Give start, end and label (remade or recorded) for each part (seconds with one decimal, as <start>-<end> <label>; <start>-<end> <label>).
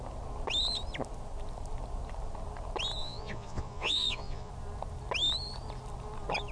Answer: 0.0-3.0 recorded; 3.0-4.5 remade; 4.5-6.5 recorded